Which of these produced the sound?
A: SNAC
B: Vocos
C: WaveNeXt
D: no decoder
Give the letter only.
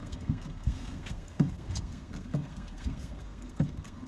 A